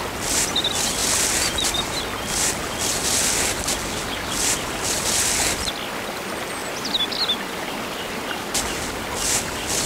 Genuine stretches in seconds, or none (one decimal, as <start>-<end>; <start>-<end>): 0.0-9.9